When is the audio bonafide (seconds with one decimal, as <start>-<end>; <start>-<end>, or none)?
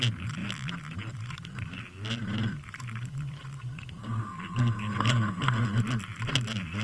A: 0.0-4.0; 5.8-6.8